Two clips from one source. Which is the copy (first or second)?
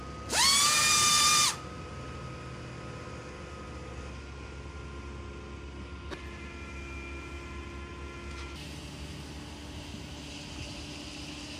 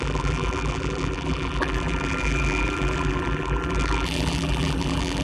second